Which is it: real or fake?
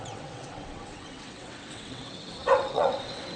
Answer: fake